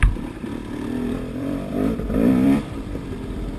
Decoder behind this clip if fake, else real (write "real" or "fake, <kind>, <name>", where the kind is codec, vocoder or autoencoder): fake, vocoder, BigVGAN v2